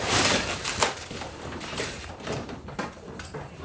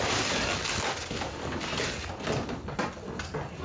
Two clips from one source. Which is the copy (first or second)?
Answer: first